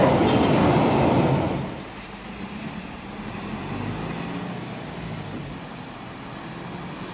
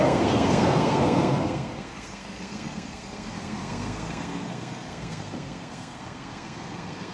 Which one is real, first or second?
first